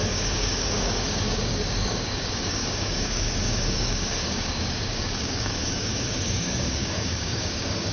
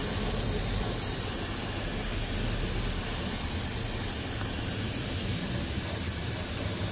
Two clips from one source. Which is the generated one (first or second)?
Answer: first